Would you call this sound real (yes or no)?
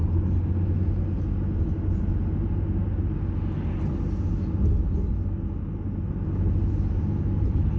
yes